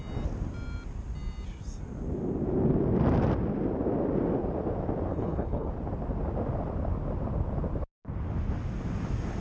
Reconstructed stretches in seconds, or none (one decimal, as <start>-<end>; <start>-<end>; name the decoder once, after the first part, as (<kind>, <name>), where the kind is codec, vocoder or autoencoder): 5.1-5.7 (codec, HILCodec)